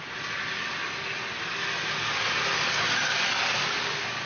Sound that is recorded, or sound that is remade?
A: recorded